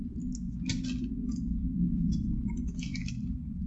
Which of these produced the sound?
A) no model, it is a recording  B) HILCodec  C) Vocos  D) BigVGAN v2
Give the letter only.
A